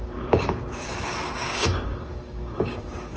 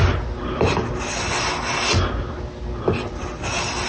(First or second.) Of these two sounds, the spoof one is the first